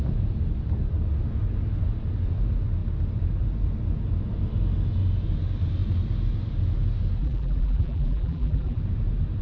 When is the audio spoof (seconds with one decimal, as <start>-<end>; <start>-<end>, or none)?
7.2-8.8

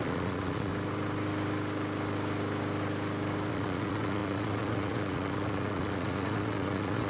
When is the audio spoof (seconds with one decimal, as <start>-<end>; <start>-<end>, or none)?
0.0-0.7; 3.5-7.1

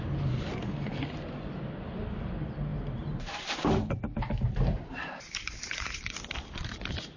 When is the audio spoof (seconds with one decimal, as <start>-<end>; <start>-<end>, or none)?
2.7-7.2

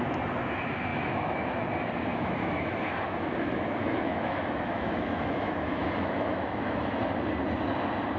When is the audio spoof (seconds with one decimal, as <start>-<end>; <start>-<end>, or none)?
0.9-1.7; 2.1-7.0